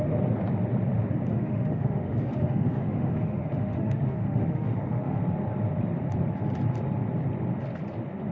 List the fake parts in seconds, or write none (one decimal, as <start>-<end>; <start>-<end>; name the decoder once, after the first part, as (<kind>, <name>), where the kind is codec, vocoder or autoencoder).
1.3-5.2 (autoencoder, DAC-VAE)